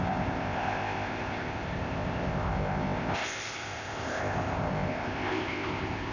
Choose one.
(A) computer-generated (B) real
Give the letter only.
A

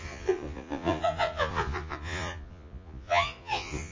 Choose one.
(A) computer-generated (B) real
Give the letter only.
A